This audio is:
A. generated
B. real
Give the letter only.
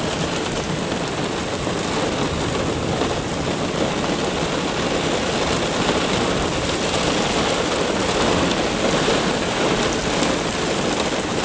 B